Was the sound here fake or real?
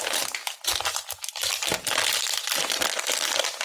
real